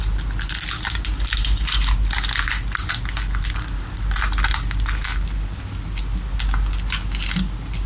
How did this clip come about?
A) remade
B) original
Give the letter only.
B